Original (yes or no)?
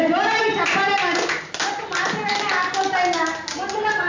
yes